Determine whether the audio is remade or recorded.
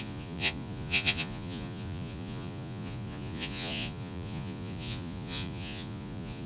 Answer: remade